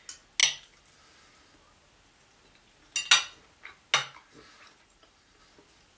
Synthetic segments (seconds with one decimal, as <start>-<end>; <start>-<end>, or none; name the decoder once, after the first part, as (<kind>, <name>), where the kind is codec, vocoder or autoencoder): 4.0-5.4 (vocoder, BigVGAN v2)